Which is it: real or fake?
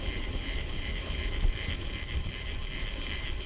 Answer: fake